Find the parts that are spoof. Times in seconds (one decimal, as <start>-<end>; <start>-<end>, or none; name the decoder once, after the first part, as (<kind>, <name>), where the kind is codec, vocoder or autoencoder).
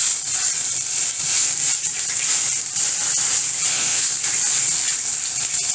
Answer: 3.7-4.2 (codec, SNAC)